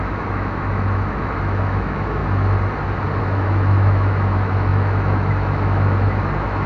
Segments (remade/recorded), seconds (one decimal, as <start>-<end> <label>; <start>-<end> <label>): 0.0-2.2 remade; 2.2-3.2 recorded; 3.2-6.7 remade